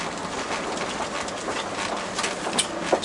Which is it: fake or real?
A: real